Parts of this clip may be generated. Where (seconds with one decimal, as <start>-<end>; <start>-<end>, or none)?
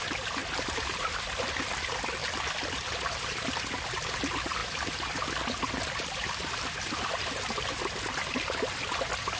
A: none